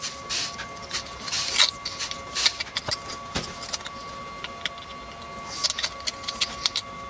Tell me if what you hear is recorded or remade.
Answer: recorded